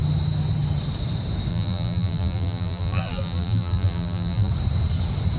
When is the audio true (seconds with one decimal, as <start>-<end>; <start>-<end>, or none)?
0.0-1.5; 4.5-5.4